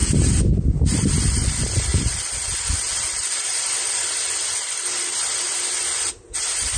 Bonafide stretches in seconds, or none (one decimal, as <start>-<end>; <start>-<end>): 0.0-6.8